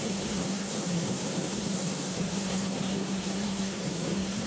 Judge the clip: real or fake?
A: fake